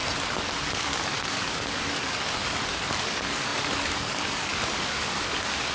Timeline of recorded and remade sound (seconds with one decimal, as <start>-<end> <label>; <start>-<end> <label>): 0.0-0.8 recorded; 0.8-5.7 remade